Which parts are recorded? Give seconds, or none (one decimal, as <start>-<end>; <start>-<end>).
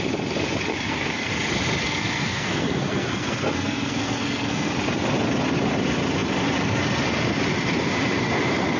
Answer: 0.0-0.7; 1.3-1.8; 4.7-8.8